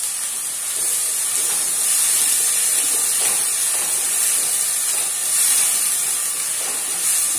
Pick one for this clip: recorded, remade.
recorded